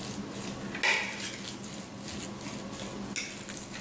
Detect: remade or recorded recorded